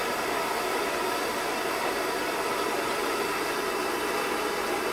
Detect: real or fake fake